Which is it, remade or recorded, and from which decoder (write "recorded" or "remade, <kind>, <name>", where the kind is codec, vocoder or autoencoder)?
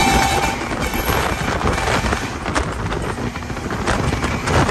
recorded